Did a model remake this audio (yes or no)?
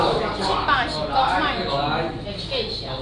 no